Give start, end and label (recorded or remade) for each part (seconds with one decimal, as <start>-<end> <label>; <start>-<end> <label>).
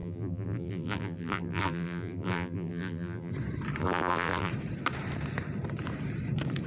0.0-3.3 remade; 3.3-3.8 recorded; 3.8-4.5 remade; 4.5-6.7 recorded